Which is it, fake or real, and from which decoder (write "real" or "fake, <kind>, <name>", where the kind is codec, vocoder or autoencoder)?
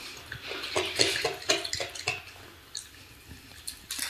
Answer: real